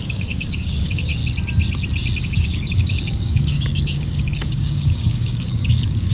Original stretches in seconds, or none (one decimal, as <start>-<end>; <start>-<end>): 1.2-2.2